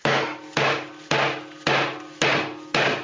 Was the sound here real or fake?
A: real